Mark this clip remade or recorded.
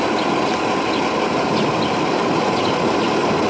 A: recorded